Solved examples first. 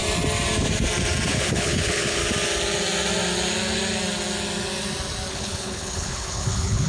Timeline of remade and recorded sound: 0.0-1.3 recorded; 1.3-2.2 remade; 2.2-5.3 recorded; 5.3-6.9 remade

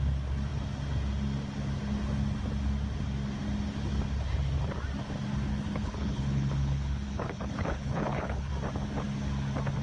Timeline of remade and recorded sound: 0.0-5.5 recorded; 5.5-8.5 remade; 8.5-9.8 recorded

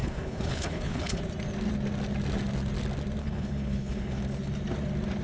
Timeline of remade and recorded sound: 0.0-1.2 remade; 1.2-3.2 recorded; 3.2-4.2 remade; 4.2-5.2 recorded

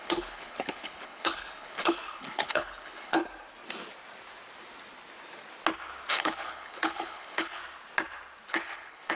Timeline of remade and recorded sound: 0.0-3.2 remade; 3.2-6.1 recorded; 6.1-7.6 remade; 7.6-8.5 recorded; 8.5-9.2 remade

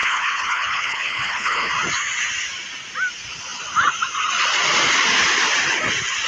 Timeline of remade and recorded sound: 0.0-1.7 remade; 1.7-6.3 recorded

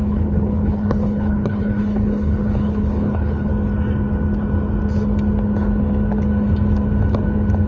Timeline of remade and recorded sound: 0.0-3.5 remade; 3.5-7.7 recorded